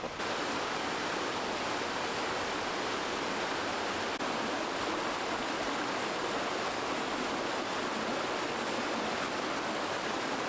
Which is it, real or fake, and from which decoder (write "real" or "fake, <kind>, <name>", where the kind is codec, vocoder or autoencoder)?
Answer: real